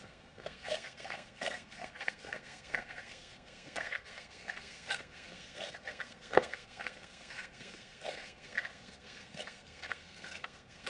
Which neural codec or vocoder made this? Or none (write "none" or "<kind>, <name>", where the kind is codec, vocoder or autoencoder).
codec, SNAC